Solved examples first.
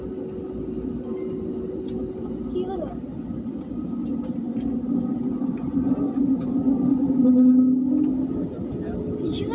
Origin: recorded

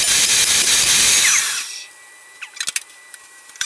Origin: recorded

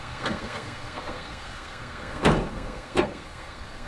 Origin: remade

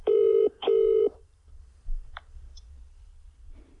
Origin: remade